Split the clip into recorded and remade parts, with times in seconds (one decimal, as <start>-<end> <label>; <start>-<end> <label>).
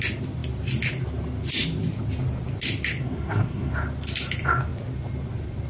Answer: 0.0-3.0 recorded; 3.0-3.7 remade; 3.7-5.7 recorded